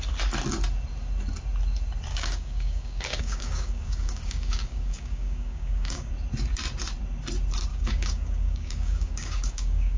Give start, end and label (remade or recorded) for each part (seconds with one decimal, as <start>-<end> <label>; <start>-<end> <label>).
0.0-2.1 recorded; 2.1-6.1 remade; 6.1-7.7 recorded; 7.7-10.0 remade